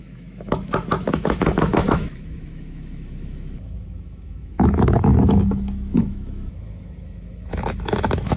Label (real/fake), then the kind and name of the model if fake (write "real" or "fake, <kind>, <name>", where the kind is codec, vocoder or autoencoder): fake, autoencoder, DAC-VAE